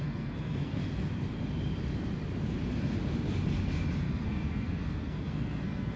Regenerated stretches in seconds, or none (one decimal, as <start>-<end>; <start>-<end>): 0.0-0.8; 4.0-6.0